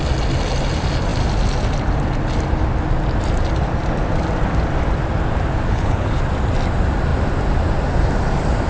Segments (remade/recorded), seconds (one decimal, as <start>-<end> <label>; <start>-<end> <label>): 0.0-5.7 recorded; 5.7-6.2 remade; 6.2-8.7 recorded